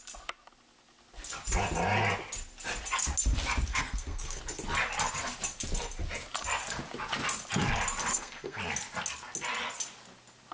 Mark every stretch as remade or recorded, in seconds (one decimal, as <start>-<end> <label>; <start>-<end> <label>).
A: 0.0-3.7 recorded; 3.7-4.4 remade; 4.4-8.1 recorded; 8.1-8.6 remade; 8.6-10.5 recorded